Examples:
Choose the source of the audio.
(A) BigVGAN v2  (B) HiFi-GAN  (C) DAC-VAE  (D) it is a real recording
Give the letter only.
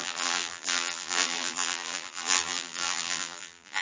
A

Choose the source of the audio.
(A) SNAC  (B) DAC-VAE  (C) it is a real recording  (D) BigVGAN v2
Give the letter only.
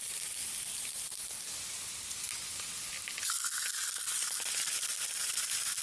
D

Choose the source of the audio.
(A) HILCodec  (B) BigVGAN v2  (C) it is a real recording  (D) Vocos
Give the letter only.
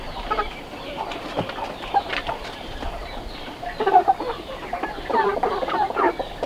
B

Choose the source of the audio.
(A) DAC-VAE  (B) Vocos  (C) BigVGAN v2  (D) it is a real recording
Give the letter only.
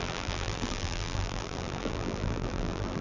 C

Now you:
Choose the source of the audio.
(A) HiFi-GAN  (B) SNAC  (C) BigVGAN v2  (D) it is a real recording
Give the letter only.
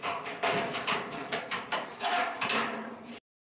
C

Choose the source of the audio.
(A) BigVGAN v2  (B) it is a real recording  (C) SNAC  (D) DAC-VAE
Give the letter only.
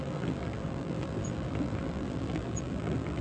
A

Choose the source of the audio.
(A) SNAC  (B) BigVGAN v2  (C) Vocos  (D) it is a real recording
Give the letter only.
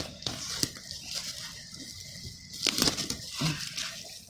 D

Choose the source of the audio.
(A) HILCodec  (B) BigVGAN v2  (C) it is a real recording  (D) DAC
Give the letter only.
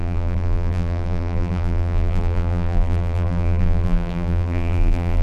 B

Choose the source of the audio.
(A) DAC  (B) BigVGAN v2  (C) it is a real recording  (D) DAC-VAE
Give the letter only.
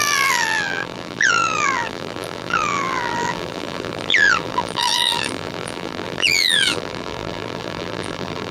B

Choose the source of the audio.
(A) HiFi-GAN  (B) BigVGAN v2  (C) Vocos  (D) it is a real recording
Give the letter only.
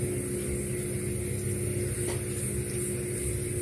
D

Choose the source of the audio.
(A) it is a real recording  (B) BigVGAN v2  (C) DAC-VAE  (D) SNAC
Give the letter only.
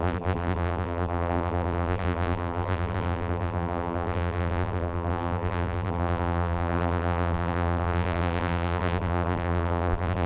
B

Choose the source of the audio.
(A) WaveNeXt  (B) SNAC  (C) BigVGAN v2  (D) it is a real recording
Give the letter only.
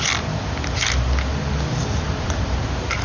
D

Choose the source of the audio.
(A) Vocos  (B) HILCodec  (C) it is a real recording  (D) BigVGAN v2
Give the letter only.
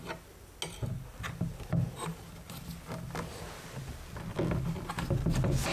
C